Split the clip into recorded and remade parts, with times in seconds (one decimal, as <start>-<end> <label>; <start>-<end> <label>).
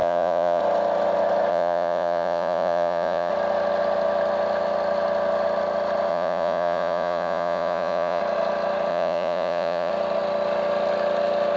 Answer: 0.0-0.6 remade; 0.6-1.5 recorded; 1.5-3.3 remade; 3.3-6.1 recorded; 6.1-8.2 remade; 8.2-8.9 recorded; 8.9-9.9 remade; 9.9-11.6 recorded